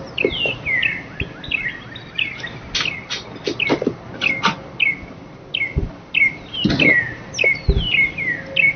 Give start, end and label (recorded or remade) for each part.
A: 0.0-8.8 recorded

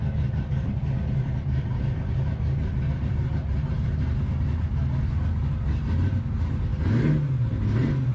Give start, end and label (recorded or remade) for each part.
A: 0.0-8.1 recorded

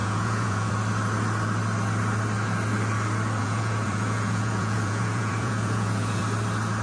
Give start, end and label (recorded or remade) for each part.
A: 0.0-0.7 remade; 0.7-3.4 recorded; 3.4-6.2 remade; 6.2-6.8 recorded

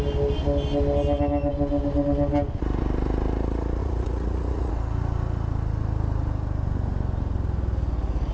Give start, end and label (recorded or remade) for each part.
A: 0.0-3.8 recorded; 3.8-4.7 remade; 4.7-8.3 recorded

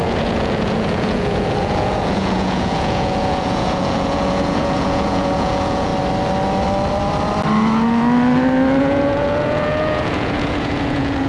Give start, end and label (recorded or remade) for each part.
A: 0.0-5.9 remade; 5.9-8.8 recorded; 8.8-11.3 remade